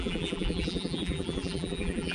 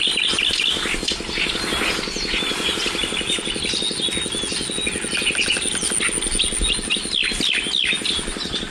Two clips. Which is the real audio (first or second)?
second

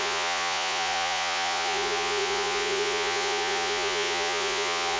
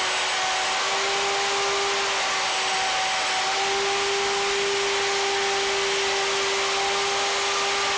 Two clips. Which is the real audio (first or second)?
second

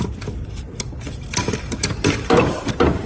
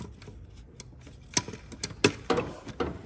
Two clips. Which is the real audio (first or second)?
second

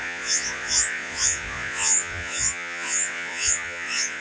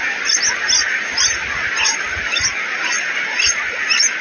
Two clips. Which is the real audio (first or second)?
second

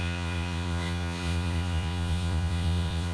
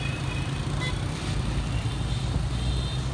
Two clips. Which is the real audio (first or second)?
second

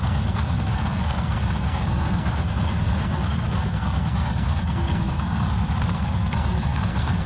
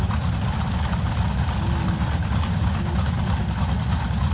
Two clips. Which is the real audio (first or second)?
second